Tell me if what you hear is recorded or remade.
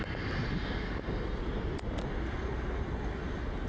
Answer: recorded